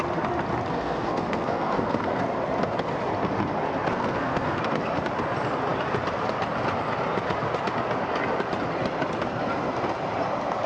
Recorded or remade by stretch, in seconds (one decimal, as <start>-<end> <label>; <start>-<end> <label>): 0.0-0.7 recorded; 0.7-2.2 remade; 2.2-3.9 recorded; 3.9-4.6 remade; 4.6-10.7 recorded

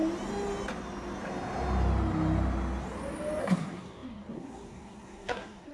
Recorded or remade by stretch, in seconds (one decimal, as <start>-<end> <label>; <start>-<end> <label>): 0.0-3.4 recorded; 3.4-5.7 remade

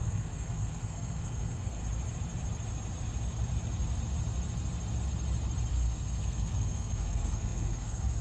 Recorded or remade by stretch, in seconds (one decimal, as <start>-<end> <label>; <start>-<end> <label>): 0.0-1.8 remade; 1.8-5.7 recorded; 5.7-8.2 remade